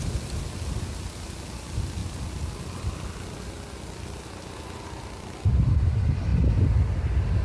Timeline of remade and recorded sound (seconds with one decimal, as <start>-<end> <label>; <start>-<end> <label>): 0.0-7.4 recorded